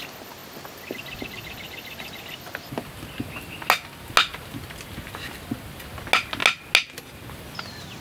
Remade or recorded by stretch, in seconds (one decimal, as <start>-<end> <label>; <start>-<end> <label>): 0.0-8.0 recorded